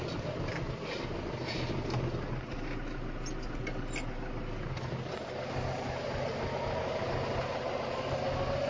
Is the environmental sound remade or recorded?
recorded